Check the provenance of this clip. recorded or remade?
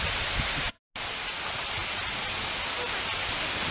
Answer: recorded